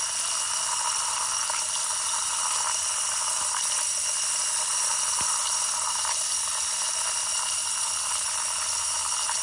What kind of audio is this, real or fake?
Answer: real